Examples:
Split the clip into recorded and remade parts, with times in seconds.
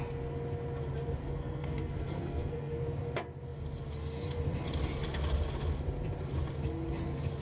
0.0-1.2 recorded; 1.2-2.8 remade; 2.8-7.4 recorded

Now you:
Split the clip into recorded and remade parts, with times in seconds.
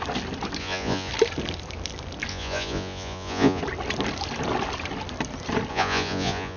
0.0-0.6 recorded; 0.6-1.1 remade; 1.1-2.3 recorded; 2.3-3.6 remade; 3.6-5.7 recorded; 5.7-6.6 remade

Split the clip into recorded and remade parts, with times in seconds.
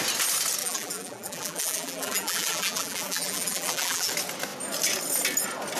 0.0-0.6 recorded; 0.6-4.1 remade; 4.1-5.8 recorded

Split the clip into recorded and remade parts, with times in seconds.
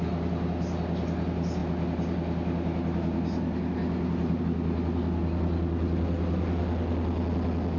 0.0-7.8 recorded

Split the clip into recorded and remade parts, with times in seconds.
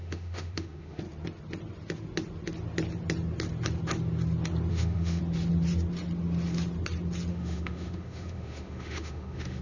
0.0-1.0 remade; 1.0-4.7 recorded; 4.7-5.2 remade; 5.2-7.3 recorded; 7.3-9.6 remade